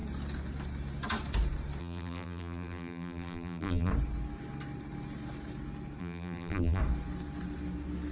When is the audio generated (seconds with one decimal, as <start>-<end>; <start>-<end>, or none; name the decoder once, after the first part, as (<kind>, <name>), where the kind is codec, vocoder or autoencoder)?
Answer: 1.8-3.9 (vocoder, BigVGAN v2); 6.0-6.8

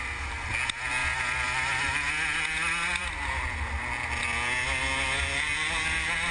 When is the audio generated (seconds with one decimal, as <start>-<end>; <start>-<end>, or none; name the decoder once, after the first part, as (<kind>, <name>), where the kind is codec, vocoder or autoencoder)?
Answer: 1.0-2.1 (vocoder, BigVGAN v2)

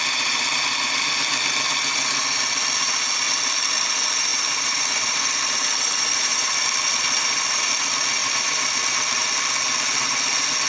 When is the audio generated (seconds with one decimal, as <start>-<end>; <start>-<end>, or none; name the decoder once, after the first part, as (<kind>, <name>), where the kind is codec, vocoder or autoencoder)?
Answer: 4.3-6.6 (vocoder, BigVGAN v2); 8.2-8.9

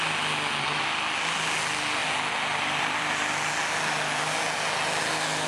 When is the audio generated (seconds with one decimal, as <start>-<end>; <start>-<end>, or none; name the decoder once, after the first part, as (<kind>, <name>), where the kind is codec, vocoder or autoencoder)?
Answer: none

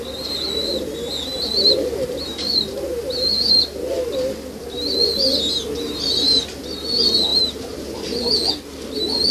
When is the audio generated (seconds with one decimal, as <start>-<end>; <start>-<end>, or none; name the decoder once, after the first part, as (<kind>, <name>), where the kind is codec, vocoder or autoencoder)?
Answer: 7.3-8.5 (vocoder, BigVGAN v2)

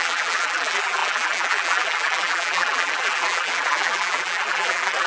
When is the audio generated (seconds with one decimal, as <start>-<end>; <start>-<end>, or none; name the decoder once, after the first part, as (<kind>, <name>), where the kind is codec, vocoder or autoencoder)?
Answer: 0.0-5.1 (vocoder, BigVGAN v2)